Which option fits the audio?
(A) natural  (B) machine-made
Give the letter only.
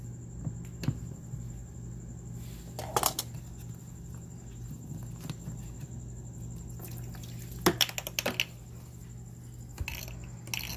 A